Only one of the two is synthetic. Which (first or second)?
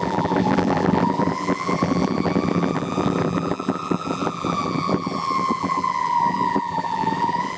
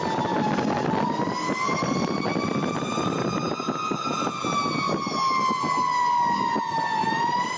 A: first